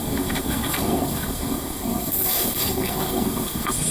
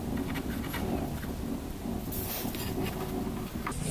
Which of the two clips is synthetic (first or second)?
first